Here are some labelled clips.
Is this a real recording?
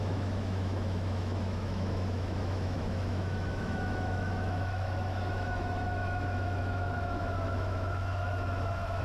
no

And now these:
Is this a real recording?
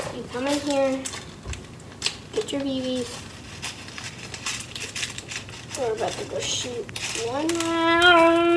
yes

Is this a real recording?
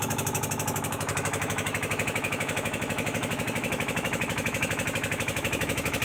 no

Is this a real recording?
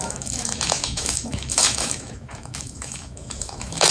no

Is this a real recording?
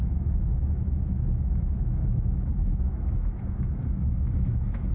no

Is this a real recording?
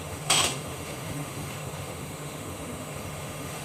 no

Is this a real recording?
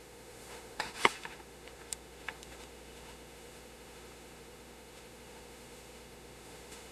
no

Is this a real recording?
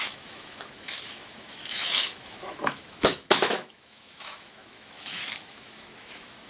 no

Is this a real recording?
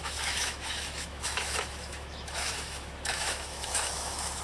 no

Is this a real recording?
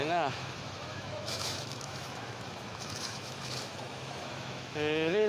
no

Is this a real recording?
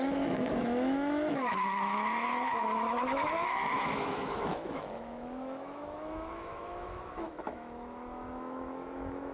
no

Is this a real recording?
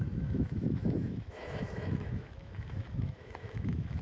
no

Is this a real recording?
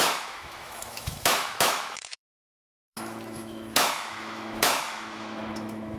no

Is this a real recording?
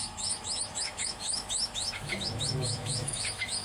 no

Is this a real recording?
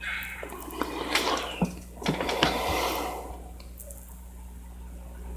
yes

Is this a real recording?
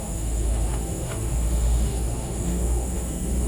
no